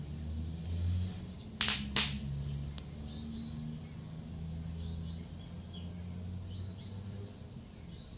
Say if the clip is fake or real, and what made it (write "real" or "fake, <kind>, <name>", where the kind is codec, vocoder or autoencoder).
real